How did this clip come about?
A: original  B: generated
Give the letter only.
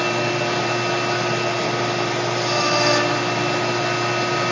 A